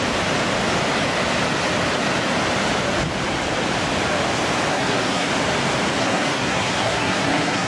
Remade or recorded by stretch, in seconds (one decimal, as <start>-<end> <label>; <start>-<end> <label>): 0.0-4.7 recorded; 4.7-5.3 remade; 5.3-6.0 recorded; 6.0-7.7 remade